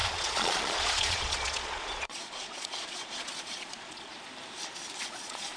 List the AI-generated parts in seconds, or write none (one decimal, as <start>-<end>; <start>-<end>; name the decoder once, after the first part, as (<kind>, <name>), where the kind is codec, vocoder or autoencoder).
0.0-4.1 (vocoder, Vocos); 5.0-5.6